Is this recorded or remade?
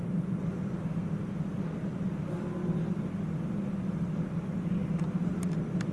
recorded